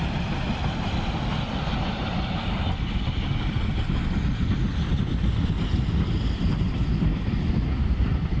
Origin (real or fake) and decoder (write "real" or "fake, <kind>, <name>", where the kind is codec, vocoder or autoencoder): real